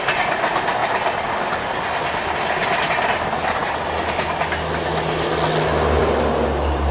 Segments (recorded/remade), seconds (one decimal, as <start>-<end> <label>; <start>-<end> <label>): 0.0-6.9 recorded